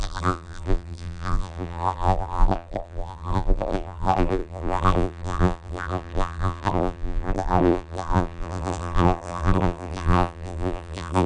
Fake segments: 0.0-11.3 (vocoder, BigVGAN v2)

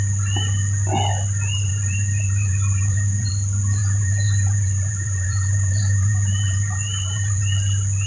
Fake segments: 1.7-3.3 (vocoder, BigVGAN v2); 3.8-7.4

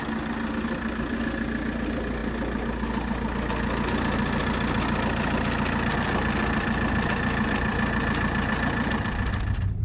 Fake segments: 0.0-2.2 (vocoder, BigVGAN v2); 5.9-9.8

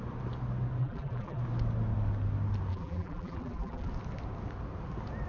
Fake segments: 0.8-1.4 (vocoder, BigVGAN v2); 2.7-3.9

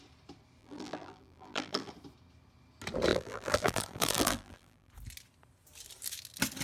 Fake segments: 0.6-1.9 (vocoder, BigVGAN v2); 3.1-4.9

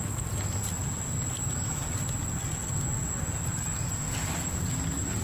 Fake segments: none

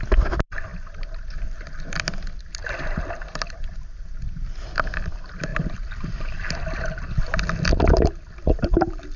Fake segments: 2.6-3.7 (vocoder, BigVGAN v2)

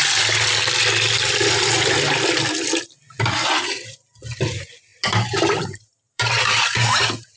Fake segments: 4.9-7.4 (vocoder, BigVGAN v2)